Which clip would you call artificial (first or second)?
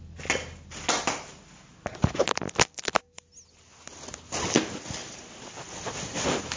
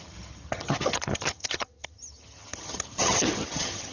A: second